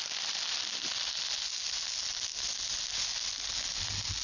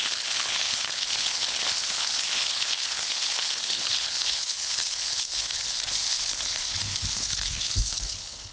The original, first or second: first